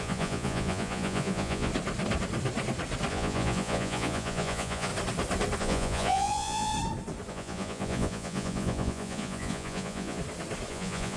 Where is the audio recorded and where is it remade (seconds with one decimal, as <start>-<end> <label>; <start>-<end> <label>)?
0.0-1.7 remade; 1.7-3.1 recorded; 3.1-4.9 remade; 4.9-5.6 recorded; 5.6-6.7 remade; 6.7-7.3 recorded; 7.3-10.2 remade; 10.2-10.7 recorded; 10.7-11.2 remade